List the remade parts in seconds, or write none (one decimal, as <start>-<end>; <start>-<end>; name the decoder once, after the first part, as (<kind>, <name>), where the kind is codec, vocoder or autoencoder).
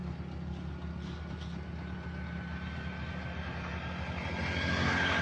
none